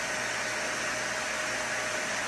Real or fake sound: real